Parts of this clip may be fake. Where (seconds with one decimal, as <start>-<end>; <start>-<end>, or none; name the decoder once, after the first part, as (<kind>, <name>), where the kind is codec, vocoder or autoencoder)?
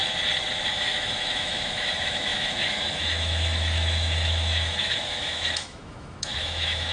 0.7-6.9 (autoencoder, DAC-VAE)